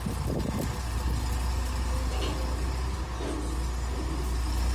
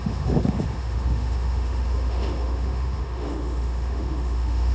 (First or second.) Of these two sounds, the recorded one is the first